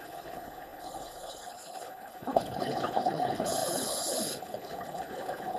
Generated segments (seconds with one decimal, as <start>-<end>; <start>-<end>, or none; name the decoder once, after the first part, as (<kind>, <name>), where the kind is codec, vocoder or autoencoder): 0.0-5.6 (codec, HILCodec)